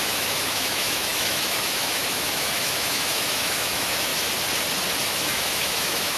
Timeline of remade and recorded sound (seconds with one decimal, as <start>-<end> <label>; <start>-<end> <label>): 0.0-4.1 remade; 4.1-5.0 recorded; 5.0-6.2 remade